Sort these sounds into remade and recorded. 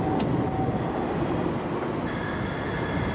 recorded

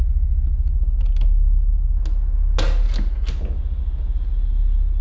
recorded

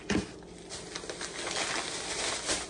recorded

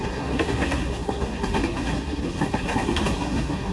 remade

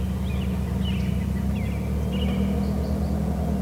recorded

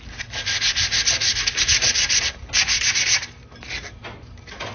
recorded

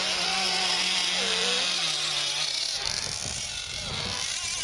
recorded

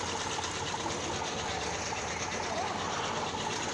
recorded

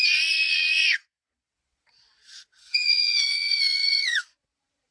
remade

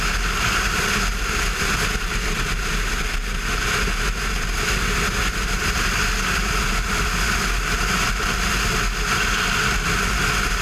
recorded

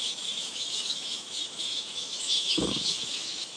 remade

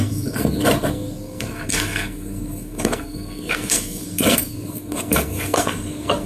remade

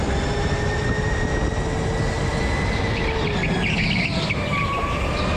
recorded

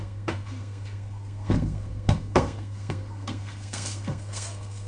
remade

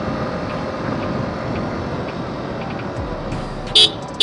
recorded